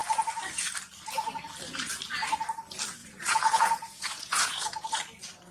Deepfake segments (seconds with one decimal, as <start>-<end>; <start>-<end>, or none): 3.0-5.0